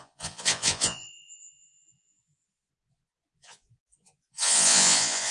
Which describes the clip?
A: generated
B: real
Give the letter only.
A